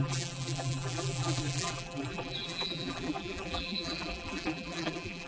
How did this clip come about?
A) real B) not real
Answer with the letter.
B